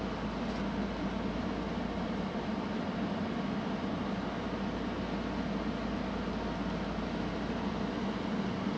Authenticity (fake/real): real